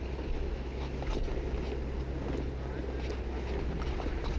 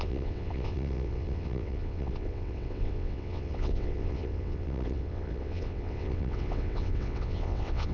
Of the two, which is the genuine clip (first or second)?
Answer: first